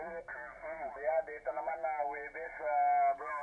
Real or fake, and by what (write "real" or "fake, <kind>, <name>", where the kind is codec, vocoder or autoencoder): real